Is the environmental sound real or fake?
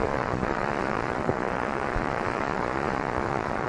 fake